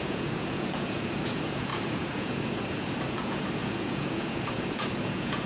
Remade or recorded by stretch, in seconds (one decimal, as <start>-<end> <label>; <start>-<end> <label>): 0.0-5.5 remade